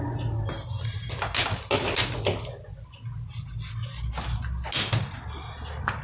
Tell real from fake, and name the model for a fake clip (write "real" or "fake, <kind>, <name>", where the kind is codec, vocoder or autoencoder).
real